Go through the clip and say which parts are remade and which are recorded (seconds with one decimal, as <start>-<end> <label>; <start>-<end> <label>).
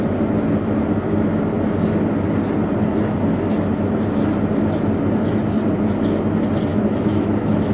0.0-6.7 recorded; 6.7-7.7 remade